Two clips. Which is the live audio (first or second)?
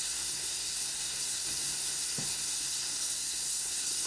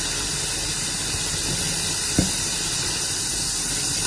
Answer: second